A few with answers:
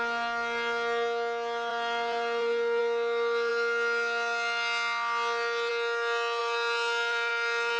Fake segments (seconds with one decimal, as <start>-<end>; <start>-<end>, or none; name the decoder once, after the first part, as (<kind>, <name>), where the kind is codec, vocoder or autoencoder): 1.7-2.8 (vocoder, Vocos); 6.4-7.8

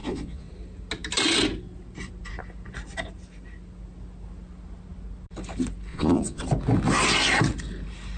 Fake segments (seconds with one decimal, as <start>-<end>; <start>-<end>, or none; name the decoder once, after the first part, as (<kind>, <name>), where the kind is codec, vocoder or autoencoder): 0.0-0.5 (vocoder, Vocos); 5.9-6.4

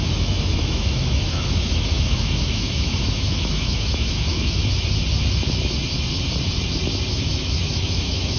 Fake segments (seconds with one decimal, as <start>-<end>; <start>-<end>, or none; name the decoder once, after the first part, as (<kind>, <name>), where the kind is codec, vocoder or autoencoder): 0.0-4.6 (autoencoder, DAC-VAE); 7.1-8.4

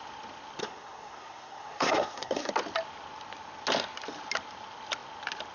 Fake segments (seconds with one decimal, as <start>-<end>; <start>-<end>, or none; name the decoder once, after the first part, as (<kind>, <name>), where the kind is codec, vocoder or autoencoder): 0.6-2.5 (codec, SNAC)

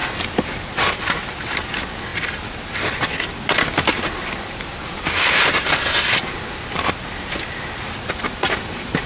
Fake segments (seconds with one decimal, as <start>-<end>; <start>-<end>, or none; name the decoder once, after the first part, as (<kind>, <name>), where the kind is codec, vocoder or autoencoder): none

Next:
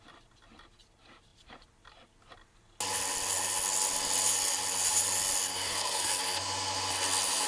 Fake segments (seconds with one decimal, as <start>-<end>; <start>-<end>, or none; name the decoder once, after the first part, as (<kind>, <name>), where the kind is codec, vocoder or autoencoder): 5.5-6.2 (codec, SNAC)